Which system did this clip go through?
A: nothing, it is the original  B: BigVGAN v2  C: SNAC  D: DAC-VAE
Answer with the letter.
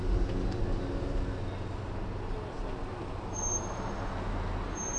A